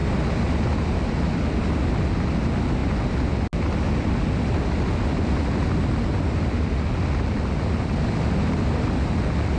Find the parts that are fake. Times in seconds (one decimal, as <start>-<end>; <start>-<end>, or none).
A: none